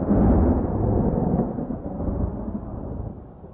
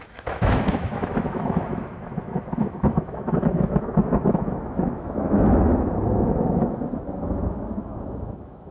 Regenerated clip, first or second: second